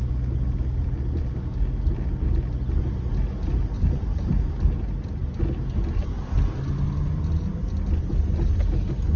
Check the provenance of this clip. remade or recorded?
recorded